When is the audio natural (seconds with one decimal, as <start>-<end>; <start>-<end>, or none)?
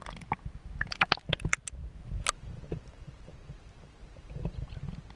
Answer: 0.0-1.8; 4.7-5.2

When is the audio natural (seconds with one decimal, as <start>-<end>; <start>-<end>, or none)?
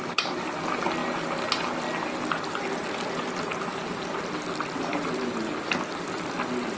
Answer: 0.0-6.8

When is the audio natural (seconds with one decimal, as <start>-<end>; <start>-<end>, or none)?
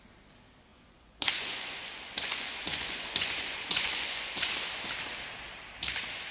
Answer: 0.0-0.7; 4.5-6.3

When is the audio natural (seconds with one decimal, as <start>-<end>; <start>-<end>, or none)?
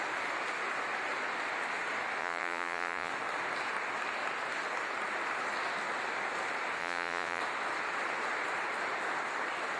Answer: 0.0-2.2; 3.1-6.8; 7.4-9.8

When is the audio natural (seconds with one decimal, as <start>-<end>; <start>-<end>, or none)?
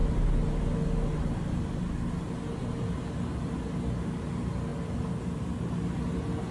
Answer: 0.0-4.7; 5.6-6.5